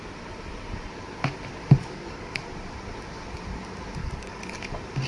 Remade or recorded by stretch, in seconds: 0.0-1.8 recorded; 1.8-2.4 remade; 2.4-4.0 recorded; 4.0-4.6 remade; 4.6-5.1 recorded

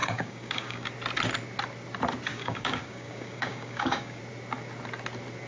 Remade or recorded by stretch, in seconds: 0.0-0.9 remade; 0.9-2.3 recorded; 2.3-4.2 remade; 4.2-5.5 recorded

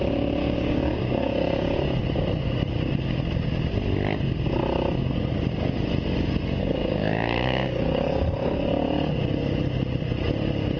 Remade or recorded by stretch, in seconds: 0.0-0.4 recorded; 0.4-1.8 remade; 1.8-6.6 recorded; 6.6-8.1 remade; 8.1-10.8 recorded

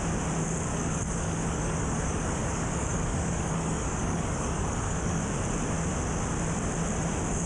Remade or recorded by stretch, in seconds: 0.0-0.7 recorded; 0.7-5.2 remade; 5.2-7.5 recorded